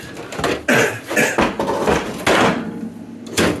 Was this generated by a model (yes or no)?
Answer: no